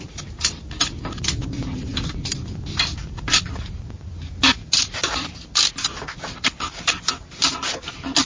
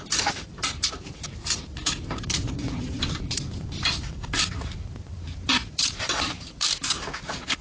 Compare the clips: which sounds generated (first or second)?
second